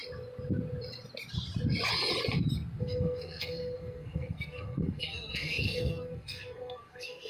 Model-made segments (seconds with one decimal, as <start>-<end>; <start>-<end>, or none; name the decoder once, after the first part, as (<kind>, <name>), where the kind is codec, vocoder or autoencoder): 2.8-7.3 (codec, SNAC)